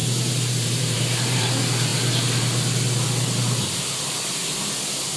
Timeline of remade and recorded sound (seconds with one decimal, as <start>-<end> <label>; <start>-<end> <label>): 0.0-1.5 remade; 1.5-5.2 recorded